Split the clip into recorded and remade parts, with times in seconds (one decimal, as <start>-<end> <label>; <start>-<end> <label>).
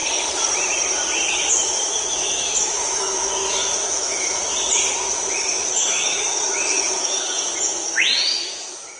0.0-1.5 recorded; 1.5-4.4 remade; 4.4-4.9 recorded; 4.9-9.0 remade